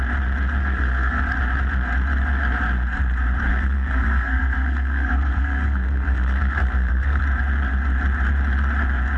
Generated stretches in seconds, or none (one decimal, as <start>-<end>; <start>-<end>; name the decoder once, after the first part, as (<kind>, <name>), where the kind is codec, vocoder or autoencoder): 0.6-1.2 (codec, SNAC); 3.5-7.2